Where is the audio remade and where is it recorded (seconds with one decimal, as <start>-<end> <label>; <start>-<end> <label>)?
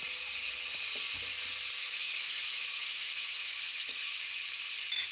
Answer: 0.0-1.8 recorded; 1.8-4.1 remade; 4.1-5.1 recorded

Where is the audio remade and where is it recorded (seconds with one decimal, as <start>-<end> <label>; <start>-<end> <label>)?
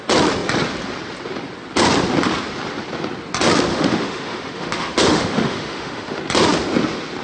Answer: 0.0-3.7 recorded; 3.7-6.2 remade; 6.2-7.2 recorded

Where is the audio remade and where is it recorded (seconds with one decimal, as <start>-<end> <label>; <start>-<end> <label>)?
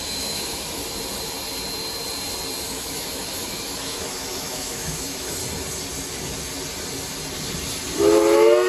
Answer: 0.0-0.8 remade; 0.8-2.6 recorded; 2.6-5.4 remade; 5.4-8.7 recorded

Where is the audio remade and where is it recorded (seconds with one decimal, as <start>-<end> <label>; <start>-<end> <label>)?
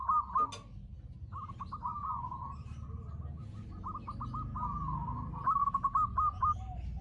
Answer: 0.0-7.0 recorded